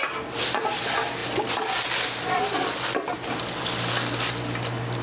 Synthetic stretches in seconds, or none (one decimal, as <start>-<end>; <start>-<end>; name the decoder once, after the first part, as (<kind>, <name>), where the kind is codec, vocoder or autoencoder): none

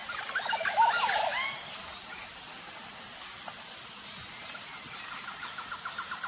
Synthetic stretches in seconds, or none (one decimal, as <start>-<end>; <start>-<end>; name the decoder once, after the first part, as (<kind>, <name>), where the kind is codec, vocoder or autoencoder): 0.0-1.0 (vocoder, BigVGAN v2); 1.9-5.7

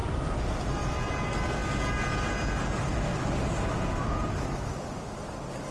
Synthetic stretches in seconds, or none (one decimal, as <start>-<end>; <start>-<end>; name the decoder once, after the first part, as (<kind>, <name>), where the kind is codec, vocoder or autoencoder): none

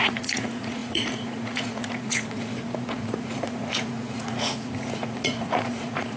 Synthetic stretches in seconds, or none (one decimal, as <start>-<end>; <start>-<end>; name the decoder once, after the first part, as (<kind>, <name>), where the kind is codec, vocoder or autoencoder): 0.0-6.2 (vocoder, Vocos)

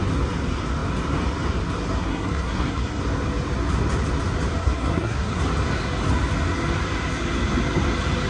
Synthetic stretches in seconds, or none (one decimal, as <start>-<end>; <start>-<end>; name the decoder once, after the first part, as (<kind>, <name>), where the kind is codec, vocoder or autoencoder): 2.0-3.0 (codec, SNAC); 4.6-5.4

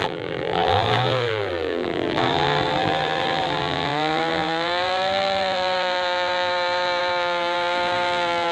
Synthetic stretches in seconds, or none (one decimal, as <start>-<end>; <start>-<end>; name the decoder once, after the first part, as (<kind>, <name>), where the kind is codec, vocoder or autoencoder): 0.0-8.5 (vocoder, BigVGAN v2)

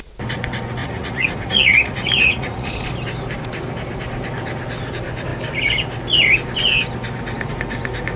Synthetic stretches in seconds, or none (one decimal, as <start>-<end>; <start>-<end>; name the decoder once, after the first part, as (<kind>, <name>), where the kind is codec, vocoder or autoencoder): 0.8-2.8 (vocoder, Vocos)